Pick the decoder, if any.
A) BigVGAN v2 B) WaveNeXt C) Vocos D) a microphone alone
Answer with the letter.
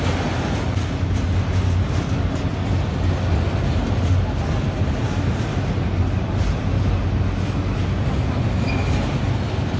D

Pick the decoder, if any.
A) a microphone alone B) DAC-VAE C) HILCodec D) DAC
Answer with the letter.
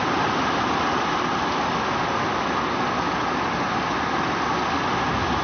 A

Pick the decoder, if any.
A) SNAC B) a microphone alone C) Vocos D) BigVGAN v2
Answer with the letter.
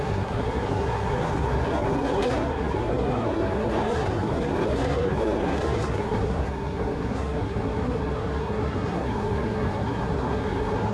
A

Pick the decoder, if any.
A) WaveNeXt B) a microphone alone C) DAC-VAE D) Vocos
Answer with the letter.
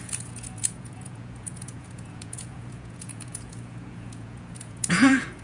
D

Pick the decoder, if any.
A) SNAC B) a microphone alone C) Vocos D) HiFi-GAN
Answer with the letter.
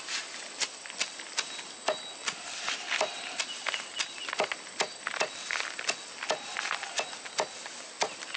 B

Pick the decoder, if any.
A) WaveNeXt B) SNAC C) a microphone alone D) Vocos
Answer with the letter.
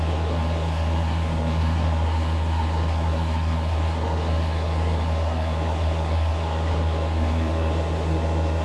B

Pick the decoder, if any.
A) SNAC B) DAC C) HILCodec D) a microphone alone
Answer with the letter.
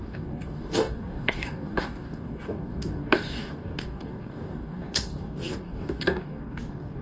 B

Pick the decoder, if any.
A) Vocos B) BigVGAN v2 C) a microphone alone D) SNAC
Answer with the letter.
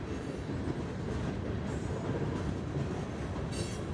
C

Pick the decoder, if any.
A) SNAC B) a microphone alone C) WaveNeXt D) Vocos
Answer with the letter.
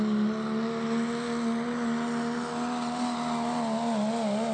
B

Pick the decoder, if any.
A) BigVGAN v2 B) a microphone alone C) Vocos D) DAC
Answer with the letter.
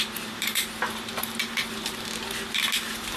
B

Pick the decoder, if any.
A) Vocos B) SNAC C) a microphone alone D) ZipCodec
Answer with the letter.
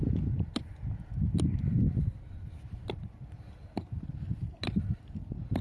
C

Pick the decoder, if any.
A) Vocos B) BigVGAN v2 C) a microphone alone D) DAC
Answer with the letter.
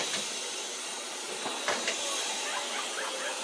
C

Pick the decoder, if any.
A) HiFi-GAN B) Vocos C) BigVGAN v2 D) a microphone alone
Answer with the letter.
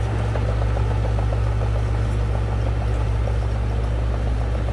D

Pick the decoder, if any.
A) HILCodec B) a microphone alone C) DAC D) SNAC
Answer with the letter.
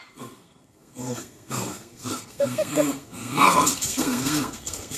D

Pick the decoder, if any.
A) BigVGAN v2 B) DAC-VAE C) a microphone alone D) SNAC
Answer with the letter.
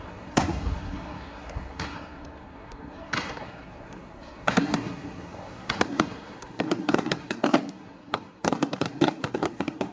D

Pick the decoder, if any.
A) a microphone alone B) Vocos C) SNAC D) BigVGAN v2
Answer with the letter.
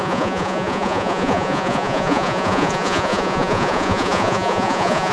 B